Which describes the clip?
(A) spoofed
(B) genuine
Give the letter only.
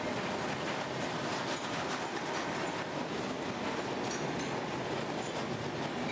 B